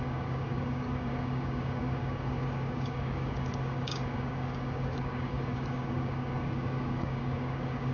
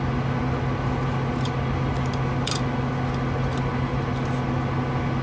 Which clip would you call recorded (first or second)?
second